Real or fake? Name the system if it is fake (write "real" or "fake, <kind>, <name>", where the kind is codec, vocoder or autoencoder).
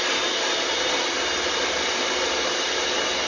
real